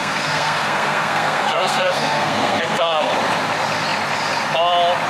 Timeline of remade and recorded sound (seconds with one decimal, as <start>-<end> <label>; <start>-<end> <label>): 0.0-3.1 remade; 3.1-5.1 recorded